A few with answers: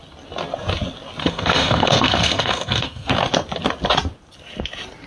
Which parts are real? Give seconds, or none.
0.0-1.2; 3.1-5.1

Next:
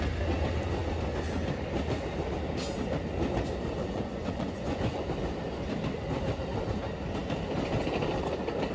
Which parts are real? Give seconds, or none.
0.0-3.8; 5.0-8.7

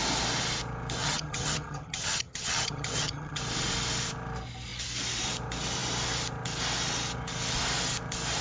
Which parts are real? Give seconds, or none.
0.0-1.0; 3.4-8.4

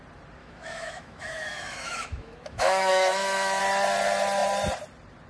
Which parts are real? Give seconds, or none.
0.0-0.4; 3.6-5.3

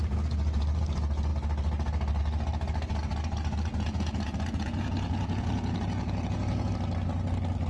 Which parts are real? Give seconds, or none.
0.0-3.7; 6.7-7.7

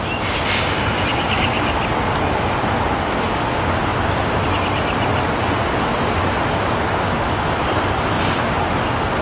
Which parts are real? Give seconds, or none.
0.0-1.1; 1.8-9.2